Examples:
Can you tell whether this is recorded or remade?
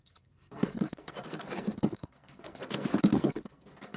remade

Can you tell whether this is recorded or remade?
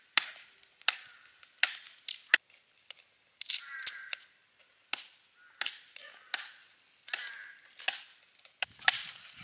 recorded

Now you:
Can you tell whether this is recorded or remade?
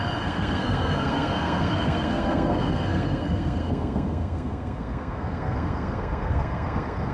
remade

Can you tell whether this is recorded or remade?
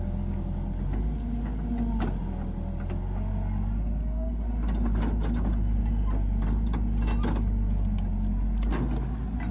recorded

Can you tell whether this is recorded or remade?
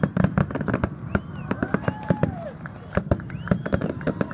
remade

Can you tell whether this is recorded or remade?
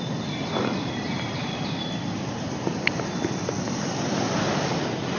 recorded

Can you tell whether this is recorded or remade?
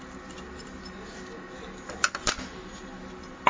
recorded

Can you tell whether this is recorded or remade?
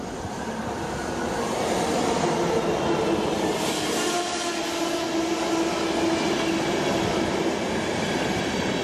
recorded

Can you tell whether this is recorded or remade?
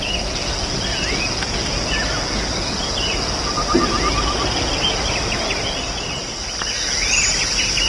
recorded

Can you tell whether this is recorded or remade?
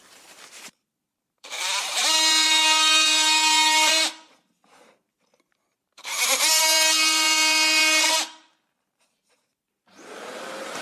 remade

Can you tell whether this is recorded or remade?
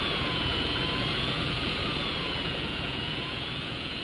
remade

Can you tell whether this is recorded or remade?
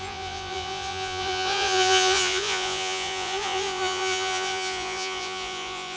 remade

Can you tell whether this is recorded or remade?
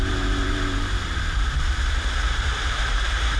remade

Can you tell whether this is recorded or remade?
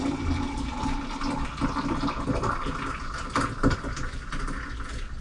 recorded